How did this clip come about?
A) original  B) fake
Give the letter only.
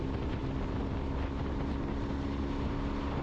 A